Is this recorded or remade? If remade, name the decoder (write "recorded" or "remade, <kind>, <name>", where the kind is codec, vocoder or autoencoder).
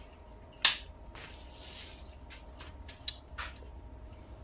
recorded